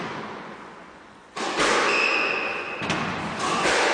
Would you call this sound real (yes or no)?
no